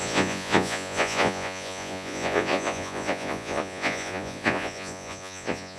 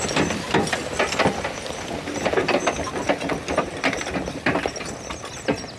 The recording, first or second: second